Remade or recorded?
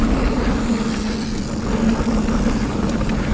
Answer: recorded